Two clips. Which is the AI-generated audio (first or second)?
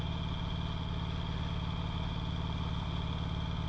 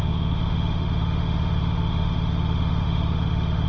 second